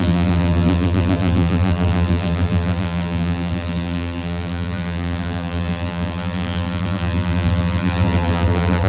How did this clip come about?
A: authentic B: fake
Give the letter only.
B